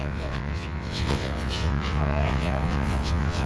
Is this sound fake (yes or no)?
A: yes